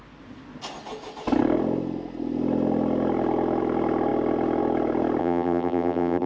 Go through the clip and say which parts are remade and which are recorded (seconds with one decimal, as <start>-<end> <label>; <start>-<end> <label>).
0.0-5.2 recorded; 5.2-6.3 remade